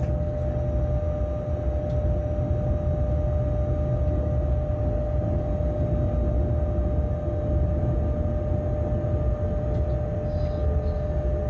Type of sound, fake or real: real